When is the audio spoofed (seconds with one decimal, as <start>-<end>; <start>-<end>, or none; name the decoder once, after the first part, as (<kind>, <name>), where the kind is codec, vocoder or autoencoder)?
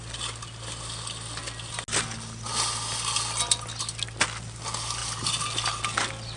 none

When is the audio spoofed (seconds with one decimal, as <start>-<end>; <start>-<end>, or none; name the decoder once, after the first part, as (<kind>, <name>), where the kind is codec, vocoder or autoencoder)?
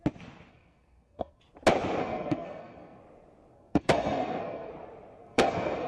0.5-1.4 (codec, SNAC); 2.0-3.0; 3.5-4.7; 5.2-5.9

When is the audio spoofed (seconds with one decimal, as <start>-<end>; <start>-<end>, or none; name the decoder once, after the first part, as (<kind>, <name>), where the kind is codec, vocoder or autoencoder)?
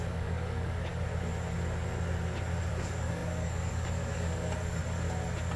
0.0-0.9 (codec, DAC); 2.7-4.8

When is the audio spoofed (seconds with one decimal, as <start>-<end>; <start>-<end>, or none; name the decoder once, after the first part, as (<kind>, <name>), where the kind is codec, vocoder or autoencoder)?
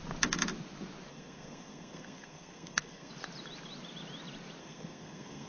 1.1-3.1 (codec, SNAC); 4.6-5.5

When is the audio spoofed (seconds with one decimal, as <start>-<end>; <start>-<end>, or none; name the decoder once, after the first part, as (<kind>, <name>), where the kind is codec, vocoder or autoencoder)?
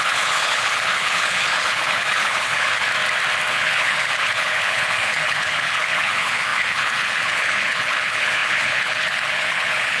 0.0-2.9 (codec, HILCodec); 3.5-10.0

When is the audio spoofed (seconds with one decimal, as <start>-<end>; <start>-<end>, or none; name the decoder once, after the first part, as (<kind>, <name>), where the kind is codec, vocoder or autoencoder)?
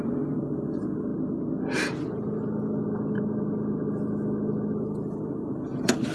0.0-1.1 (vocoder, BigVGAN v2); 4.8-6.1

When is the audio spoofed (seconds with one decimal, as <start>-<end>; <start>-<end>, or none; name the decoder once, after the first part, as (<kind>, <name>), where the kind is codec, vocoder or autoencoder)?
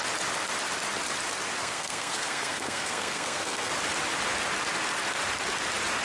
1.6-3.7 (codec, SNAC)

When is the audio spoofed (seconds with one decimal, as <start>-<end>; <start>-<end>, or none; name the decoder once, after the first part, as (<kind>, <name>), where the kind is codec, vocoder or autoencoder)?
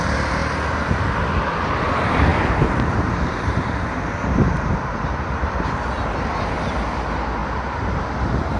2.3-5.6 (vocoder, BigVGAN v2)